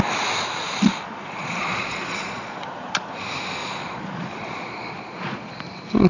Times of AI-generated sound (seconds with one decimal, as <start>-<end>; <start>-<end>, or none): 0.9-3.2; 3.6-5.6